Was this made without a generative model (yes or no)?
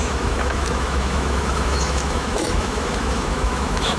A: no